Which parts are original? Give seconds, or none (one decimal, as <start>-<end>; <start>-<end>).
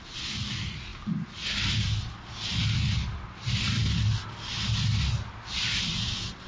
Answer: 0.0-6.5